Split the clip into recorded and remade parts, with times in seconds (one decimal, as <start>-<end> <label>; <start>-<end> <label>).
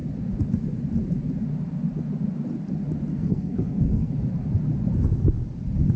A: 0.0-3.1 recorded; 3.1-4.1 remade; 4.1-6.0 recorded